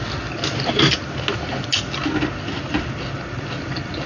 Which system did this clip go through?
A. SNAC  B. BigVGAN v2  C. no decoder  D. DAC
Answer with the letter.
C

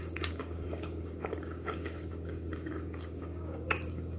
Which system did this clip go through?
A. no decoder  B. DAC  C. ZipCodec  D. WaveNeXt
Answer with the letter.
B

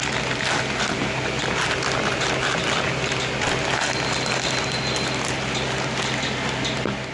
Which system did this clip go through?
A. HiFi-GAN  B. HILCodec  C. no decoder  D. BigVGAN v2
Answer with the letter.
C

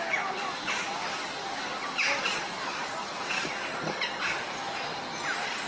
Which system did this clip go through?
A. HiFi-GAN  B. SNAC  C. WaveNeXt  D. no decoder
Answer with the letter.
D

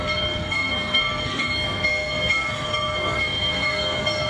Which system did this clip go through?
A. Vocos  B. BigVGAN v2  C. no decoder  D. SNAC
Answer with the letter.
D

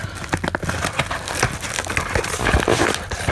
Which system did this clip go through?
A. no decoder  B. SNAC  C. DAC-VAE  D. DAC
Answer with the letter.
A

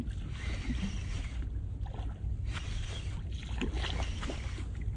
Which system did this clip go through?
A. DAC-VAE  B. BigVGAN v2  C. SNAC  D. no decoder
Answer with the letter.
D